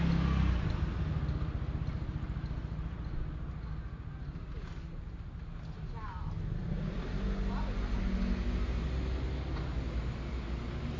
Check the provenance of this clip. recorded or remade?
recorded